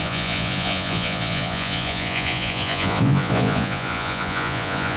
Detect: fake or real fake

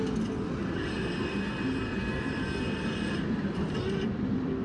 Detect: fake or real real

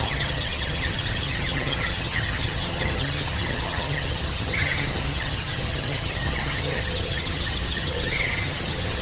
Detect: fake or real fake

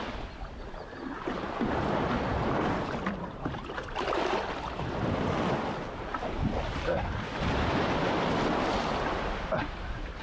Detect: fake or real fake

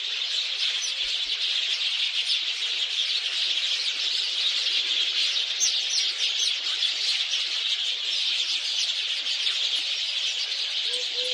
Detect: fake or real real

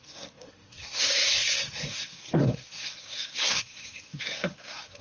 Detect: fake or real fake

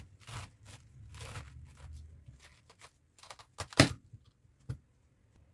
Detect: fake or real real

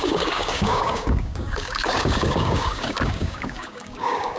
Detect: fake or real fake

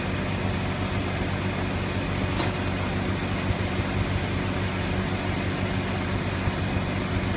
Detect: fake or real real